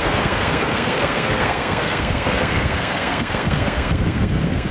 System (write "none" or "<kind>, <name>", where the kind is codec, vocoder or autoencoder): codec, SNAC